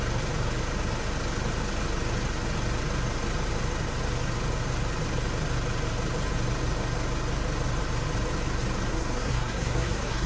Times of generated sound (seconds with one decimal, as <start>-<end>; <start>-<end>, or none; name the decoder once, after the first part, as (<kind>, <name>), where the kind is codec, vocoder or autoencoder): 8.9-10.3 (codec, SNAC)